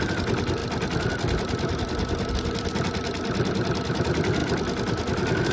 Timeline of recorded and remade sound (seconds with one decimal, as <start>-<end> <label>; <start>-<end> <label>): 0.0-5.5 recorded